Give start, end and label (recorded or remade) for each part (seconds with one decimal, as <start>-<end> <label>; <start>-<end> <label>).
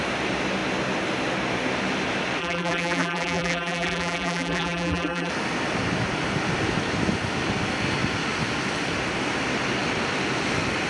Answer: 0.0-2.4 recorded; 2.4-5.3 remade; 5.3-10.9 recorded